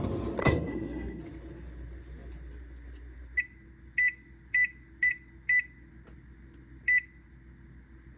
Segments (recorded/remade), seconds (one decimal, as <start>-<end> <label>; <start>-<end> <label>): 0.0-0.4 recorded; 0.4-1.2 remade; 1.2-8.2 recorded